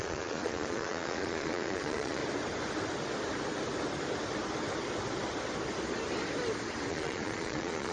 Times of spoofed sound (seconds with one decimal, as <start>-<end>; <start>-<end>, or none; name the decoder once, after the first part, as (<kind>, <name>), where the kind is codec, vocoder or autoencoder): 0.0-2.2 (vocoder, Vocos); 6.9-7.9